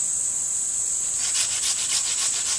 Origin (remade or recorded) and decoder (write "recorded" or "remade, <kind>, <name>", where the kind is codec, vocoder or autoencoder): recorded